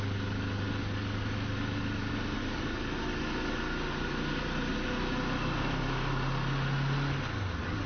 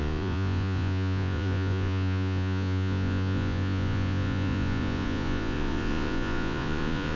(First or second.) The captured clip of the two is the first